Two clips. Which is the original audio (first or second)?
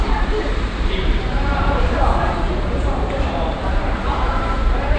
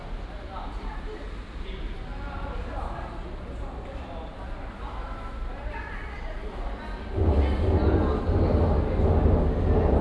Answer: second